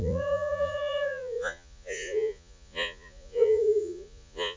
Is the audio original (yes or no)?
no